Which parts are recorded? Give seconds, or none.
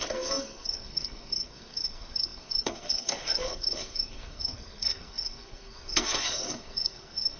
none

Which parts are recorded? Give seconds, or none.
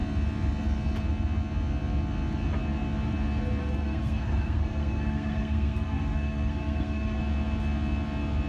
0.0-3.6; 7.2-8.5